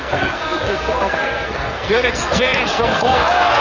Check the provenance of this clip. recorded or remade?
remade